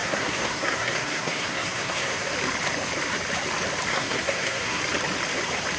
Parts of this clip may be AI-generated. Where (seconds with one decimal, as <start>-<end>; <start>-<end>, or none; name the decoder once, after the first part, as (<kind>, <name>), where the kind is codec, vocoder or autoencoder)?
0.0-2.3 (codec, SNAC); 3.9-4.8